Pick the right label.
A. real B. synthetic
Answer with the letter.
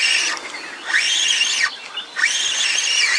A